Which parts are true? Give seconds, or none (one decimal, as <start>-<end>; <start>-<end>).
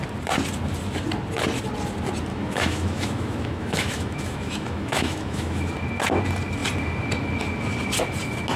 0.0-2.3; 5.7-8.6